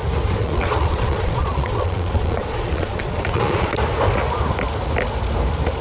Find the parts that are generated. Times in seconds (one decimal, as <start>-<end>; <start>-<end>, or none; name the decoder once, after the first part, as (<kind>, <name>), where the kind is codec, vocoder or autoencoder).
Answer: 0.4-3.7 (vocoder, Vocos)